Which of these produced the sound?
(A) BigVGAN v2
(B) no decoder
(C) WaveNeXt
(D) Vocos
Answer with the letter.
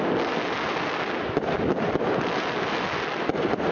B